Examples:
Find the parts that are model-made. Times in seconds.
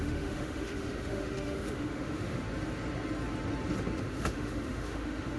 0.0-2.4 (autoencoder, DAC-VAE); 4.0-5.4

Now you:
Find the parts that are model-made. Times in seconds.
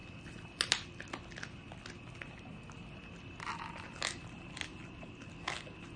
none